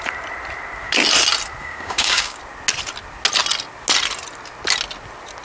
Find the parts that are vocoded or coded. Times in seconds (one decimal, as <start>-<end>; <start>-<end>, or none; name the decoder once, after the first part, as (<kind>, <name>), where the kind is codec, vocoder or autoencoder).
1.6-2.4 (codec, DAC)